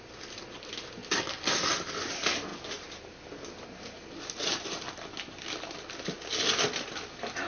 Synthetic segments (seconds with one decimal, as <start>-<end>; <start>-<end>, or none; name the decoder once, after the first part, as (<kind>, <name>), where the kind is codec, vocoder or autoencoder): none

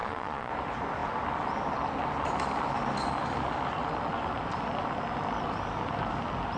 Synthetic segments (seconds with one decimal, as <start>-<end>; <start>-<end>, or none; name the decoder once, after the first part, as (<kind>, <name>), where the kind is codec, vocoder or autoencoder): 0.0-0.5 (vocoder, Vocos)

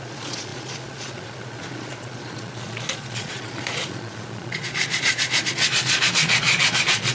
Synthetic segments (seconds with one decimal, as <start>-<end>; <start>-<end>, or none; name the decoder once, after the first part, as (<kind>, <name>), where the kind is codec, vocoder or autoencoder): 0.0-7.1 (vocoder, Vocos)

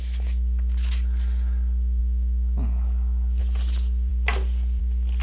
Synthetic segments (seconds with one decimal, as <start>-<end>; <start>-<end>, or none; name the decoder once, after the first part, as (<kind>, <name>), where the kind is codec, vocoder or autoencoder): none

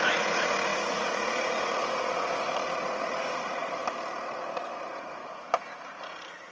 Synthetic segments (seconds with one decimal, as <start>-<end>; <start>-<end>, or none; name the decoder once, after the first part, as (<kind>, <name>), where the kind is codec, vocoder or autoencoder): 0.0-3.8 (vocoder, Vocos); 4.8-5.2; 5.9-6.5